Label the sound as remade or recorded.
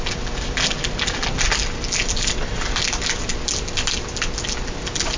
recorded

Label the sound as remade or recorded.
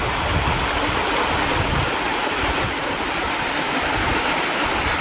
recorded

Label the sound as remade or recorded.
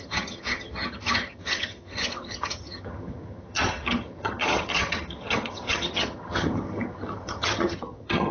remade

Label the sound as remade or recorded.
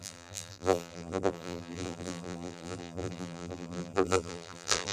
remade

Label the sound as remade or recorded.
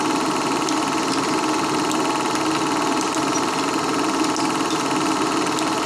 recorded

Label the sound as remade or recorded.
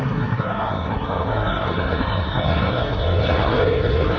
remade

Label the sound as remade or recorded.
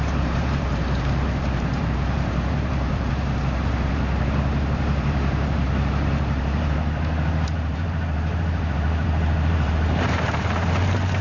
remade